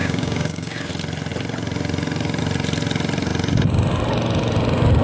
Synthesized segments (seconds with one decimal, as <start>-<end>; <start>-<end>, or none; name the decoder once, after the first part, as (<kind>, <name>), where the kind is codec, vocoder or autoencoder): 0.0-0.9 (codec, DAC)